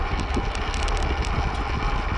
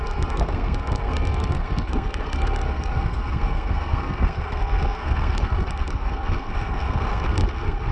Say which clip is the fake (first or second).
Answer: second